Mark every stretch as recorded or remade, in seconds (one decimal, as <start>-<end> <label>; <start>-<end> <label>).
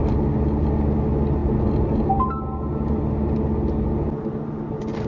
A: 0.0-5.1 recorded